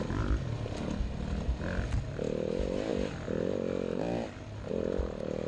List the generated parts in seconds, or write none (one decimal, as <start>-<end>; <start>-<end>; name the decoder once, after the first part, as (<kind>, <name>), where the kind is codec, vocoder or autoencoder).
none